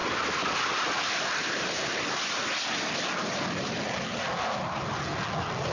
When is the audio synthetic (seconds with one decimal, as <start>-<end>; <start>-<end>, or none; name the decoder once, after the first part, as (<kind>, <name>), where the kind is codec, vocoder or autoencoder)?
none